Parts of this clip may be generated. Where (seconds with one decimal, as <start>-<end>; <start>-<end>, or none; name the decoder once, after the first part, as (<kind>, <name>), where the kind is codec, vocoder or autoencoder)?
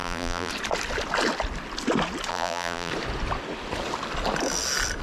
0.0-0.5 (vocoder, BigVGAN v2); 2.3-2.9